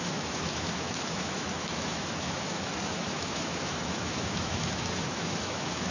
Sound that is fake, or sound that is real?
fake